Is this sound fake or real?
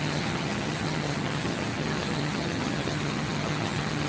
fake